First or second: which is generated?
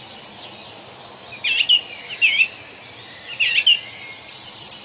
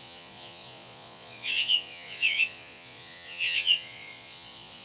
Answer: second